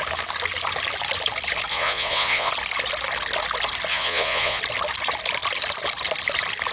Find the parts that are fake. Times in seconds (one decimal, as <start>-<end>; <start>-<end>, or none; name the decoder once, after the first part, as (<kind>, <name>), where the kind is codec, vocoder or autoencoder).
1.7-2.5 (vocoder, Vocos); 3.9-4.6